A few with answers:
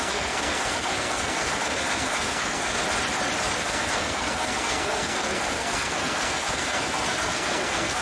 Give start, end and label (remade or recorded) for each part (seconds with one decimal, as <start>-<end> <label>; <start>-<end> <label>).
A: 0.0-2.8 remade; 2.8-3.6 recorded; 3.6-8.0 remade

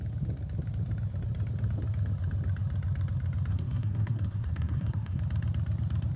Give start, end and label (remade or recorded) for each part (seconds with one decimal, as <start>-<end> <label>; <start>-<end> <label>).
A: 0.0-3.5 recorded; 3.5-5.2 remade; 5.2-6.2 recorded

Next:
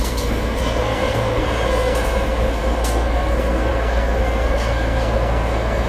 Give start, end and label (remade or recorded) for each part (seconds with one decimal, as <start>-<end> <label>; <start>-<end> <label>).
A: 0.0-5.9 remade

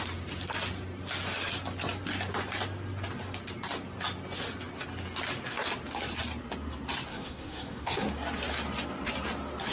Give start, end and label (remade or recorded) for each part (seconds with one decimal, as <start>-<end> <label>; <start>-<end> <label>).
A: 0.0-7.1 recorded; 7.1-8.1 remade; 8.1-9.7 recorded